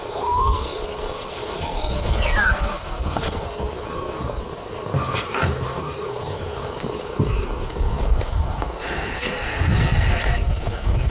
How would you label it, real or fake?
fake